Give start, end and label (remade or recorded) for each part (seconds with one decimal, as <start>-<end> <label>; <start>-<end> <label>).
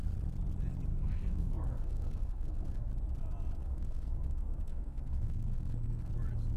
0.0-0.9 recorded; 0.9-2.9 remade; 2.9-3.6 recorded; 3.6-6.1 remade; 6.1-6.6 recorded